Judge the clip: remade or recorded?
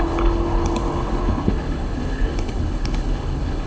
remade